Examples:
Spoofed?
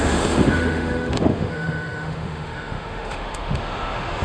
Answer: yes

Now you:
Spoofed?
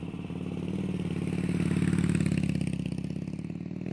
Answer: no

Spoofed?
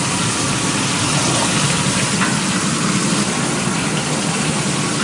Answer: no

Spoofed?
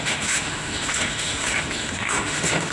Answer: yes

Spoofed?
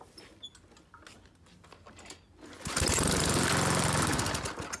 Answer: no